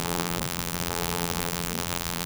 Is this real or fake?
fake